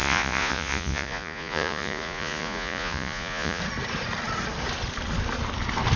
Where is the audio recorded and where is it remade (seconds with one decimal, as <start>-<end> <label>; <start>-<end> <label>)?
0.0-3.6 remade; 3.6-6.0 recorded